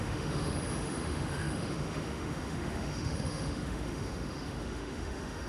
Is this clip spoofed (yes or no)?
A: yes